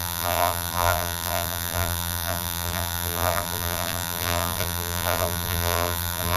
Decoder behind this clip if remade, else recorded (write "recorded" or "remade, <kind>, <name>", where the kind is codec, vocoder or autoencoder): remade, vocoder, BigVGAN v2